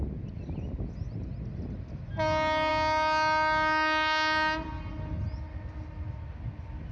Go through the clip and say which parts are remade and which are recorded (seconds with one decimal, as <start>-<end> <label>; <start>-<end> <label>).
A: 0.0-6.9 recorded